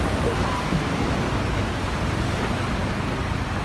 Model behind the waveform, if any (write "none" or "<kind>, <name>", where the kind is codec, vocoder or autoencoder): none